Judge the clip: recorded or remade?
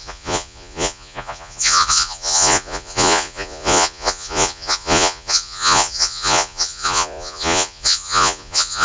remade